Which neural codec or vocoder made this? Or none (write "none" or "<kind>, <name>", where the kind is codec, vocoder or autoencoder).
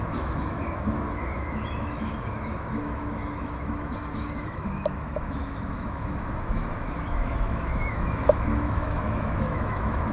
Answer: autoencoder, DAC-VAE